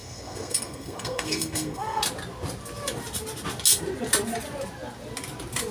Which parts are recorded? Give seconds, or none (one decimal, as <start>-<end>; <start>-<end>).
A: 2.0-5.7